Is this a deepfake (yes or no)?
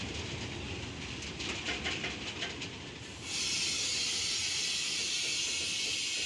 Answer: no